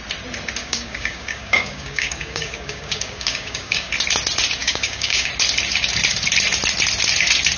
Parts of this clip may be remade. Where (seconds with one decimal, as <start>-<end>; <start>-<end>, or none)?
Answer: 0.6-3.9; 4.6-5.3